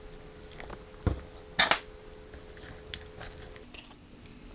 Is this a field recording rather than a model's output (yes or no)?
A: yes